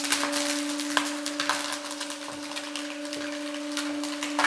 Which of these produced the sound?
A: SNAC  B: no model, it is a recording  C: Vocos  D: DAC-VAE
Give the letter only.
B